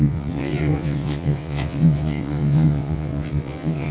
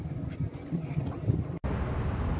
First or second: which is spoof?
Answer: first